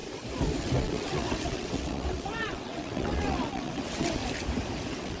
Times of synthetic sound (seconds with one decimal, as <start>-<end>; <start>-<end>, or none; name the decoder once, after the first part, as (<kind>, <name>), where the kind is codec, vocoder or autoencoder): 0.6-4.2 (vocoder, WaveNeXt); 4.8-5.2